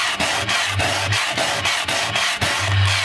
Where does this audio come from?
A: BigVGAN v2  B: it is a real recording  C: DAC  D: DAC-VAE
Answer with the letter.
B